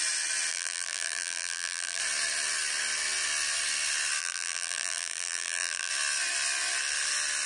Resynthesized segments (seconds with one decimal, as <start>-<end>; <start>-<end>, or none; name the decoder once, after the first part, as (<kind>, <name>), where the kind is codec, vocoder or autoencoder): 0.5-2.0 (vocoder, BigVGAN v2); 4.2-5.9